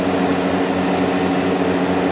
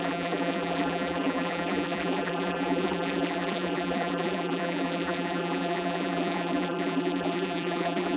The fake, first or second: second